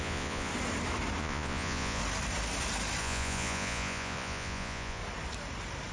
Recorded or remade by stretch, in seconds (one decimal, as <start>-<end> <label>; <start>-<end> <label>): 0.0-0.5 remade; 0.5-1.2 recorded; 1.2-2.0 remade; 2.0-3.0 recorded; 3.0-5.0 remade; 5.0-5.9 recorded